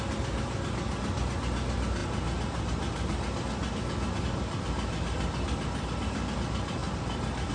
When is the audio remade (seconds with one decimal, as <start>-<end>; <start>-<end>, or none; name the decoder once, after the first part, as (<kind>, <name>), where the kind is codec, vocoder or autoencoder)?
none